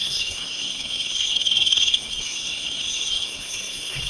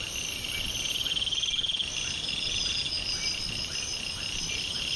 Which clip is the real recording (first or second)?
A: second